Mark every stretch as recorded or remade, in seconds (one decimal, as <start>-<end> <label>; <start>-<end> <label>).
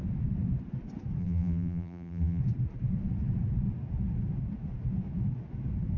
0.0-1.2 recorded; 1.2-2.4 remade; 2.4-6.0 recorded